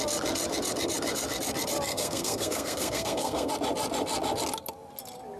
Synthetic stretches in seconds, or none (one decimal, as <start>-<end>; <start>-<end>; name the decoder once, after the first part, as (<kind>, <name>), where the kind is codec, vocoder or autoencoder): 1.9-3.5 (codec, SNAC)